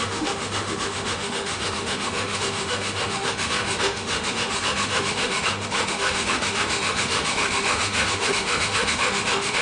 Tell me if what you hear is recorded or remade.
remade